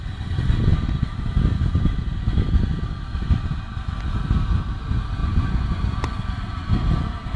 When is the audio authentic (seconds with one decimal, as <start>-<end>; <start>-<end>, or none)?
0.0-5.2; 5.8-7.4